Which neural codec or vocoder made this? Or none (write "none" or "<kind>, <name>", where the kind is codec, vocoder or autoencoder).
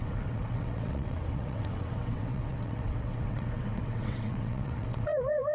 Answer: vocoder, WaveNeXt